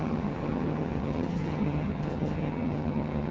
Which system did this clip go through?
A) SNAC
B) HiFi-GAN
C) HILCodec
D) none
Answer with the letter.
B